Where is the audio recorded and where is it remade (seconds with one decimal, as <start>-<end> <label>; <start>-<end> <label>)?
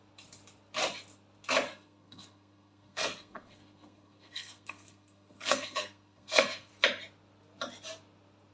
0.0-1.7 recorded; 1.7-6.7 remade; 6.7-8.5 recorded